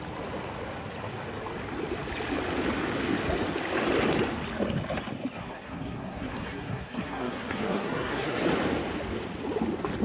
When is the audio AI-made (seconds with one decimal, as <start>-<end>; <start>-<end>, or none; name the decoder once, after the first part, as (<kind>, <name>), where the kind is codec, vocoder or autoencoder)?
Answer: 5.4-8.4 (codec, SNAC)